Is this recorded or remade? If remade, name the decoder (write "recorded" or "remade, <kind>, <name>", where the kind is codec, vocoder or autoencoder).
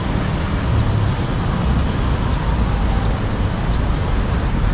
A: recorded